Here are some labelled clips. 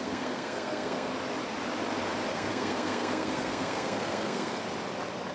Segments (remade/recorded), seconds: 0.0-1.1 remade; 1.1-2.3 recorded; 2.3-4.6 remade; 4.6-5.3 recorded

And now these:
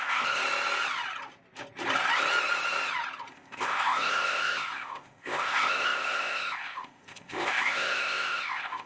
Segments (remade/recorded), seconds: 0.0-0.4 remade; 0.4-3.3 recorded; 3.3-8.9 remade

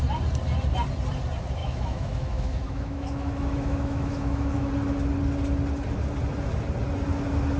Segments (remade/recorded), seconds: 0.0-1.6 recorded; 1.6-4.7 remade; 4.7-7.6 recorded

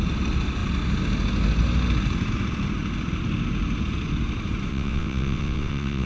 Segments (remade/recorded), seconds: 0.0-4.7 recorded; 4.7-6.1 remade

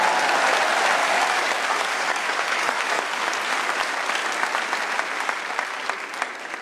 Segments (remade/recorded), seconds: 0.0-1.0 recorded; 1.0-3.3 remade; 3.3-6.6 recorded

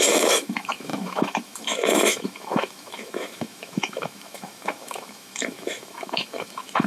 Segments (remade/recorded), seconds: 0.0-6.9 remade

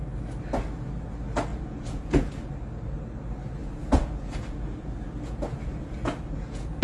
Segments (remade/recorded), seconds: 0.0-1.5 recorded; 1.5-2.5 remade; 2.5-3.6 recorded; 3.6-6.8 remade